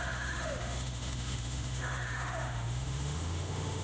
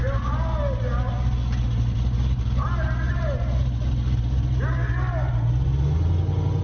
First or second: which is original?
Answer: second